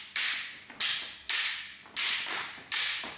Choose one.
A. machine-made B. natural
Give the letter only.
B